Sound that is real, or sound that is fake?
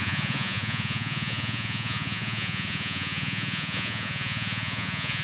fake